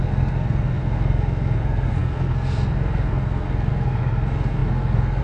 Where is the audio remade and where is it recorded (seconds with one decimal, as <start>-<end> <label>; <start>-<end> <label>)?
0.0-5.2 remade